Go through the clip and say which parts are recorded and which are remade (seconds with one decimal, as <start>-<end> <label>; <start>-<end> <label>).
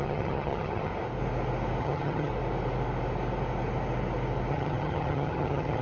0.0-0.9 remade; 0.9-1.8 recorded; 1.8-2.3 remade; 2.3-4.5 recorded; 4.5-5.8 remade